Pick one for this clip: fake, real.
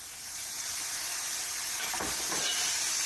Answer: fake